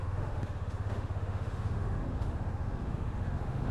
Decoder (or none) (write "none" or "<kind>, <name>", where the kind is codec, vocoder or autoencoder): autoencoder, DAC-VAE